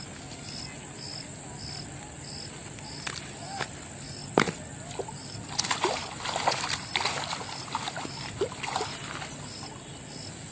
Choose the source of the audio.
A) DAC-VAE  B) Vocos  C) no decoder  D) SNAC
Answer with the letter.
C